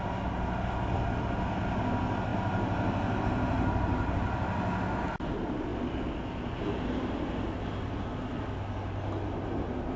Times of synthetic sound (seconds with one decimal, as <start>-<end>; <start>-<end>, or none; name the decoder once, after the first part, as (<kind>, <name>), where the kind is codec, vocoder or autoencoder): none